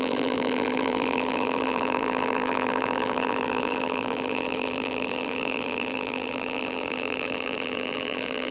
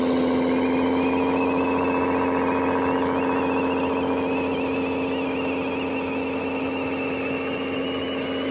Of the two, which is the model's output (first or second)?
first